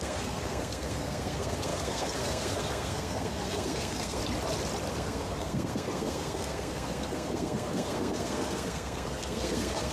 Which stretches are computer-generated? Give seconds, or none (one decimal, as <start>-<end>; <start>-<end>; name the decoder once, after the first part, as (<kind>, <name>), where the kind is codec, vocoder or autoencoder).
0.0-4.2 (codec, SNAC); 4.9-9.9